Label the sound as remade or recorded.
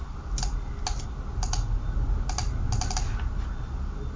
recorded